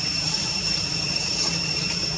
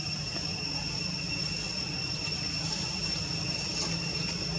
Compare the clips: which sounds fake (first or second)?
first